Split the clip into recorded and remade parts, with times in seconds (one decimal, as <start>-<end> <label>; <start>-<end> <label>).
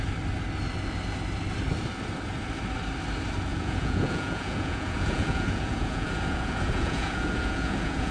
0.0-3.5 recorded; 3.5-8.1 remade